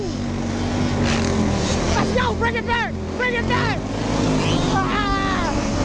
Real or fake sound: real